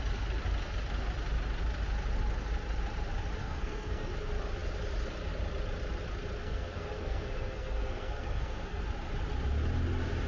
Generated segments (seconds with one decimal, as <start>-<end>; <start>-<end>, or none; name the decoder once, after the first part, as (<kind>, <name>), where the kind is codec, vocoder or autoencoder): 3.4-4.1 (codec, SNAC); 6.4-8.8